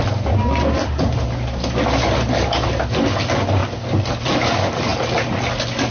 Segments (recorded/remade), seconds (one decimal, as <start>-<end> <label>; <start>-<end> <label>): 0.0-5.9 recorded